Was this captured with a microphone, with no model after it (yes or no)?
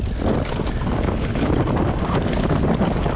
yes